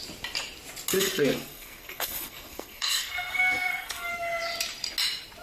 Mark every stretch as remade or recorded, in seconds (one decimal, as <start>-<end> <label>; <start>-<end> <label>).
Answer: 0.0-0.9 recorded; 0.9-4.1 remade; 4.1-5.4 recorded